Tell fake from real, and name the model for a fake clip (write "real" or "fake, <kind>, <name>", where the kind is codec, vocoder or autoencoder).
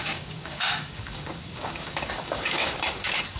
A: fake, codec, DAC